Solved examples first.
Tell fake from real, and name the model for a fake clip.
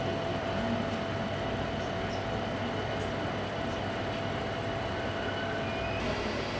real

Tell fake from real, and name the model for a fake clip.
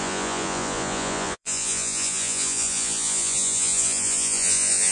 fake, vocoder, Vocos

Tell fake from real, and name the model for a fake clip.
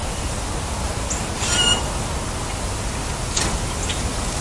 real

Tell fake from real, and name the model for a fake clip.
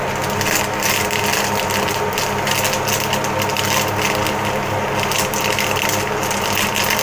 real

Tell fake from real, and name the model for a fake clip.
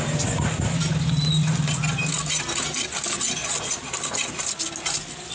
real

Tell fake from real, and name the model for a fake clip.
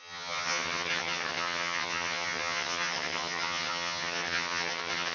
fake, vocoder, HiFi-GAN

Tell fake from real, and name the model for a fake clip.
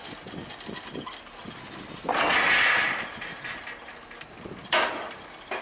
real